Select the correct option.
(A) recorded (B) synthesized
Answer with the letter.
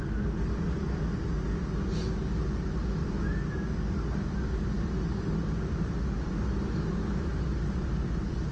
A